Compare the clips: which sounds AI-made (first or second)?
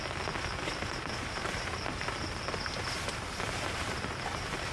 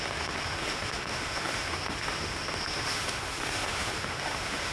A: second